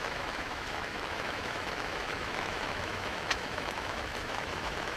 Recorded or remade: remade